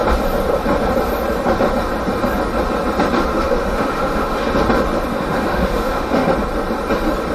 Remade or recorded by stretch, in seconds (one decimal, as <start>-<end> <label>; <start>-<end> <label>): 0.0-3.3 recorded; 3.3-4.5 remade; 4.5-5.1 recorded; 5.1-6.3 remade; 6.3-7.3 recorded